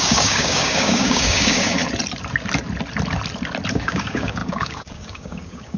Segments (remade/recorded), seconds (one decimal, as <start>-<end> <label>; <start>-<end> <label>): 0.0-1.8 remade; 1.8-3.7 recorded; 3.7-5.8 remade